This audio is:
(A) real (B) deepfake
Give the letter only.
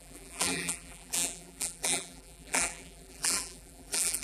B